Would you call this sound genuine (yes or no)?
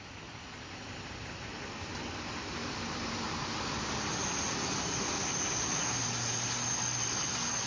yes